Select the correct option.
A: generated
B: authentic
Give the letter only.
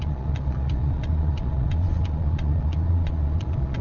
A